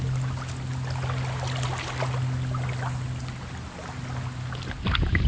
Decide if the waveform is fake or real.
real